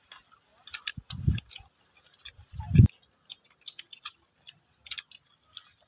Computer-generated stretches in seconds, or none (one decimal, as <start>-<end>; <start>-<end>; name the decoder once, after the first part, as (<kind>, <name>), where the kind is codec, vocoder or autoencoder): none